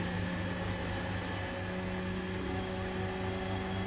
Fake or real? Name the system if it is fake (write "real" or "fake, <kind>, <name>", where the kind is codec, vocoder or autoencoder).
real